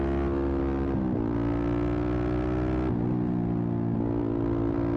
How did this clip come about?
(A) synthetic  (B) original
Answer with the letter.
B